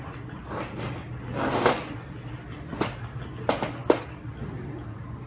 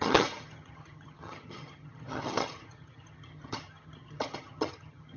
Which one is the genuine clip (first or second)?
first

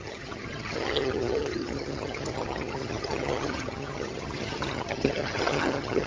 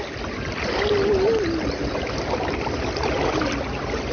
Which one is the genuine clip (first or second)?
second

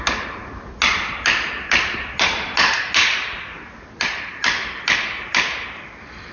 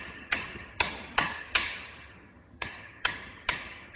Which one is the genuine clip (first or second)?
first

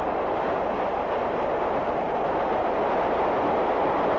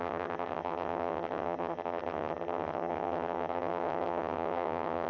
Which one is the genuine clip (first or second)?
first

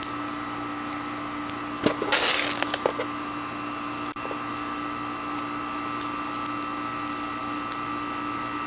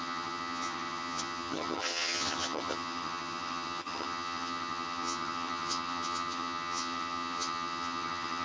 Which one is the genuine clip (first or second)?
first